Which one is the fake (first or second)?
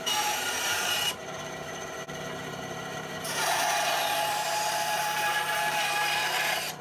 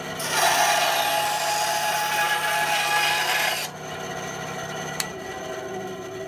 first